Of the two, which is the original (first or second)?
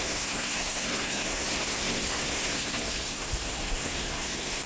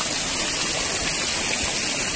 second